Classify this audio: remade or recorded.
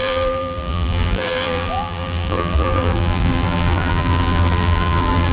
remade